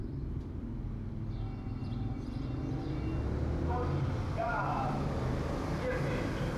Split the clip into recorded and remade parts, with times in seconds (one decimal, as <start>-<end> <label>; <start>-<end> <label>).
0.0-0.6 remade; 0.6-1.8 recorded; 1.8-2.6 remade; 2.6-6.6 recorded